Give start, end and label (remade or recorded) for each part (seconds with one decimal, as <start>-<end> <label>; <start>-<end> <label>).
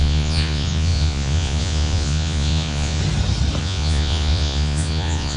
0.0-3.0 remade; 3.0-3.6 recorded; 3.6-5.4 remade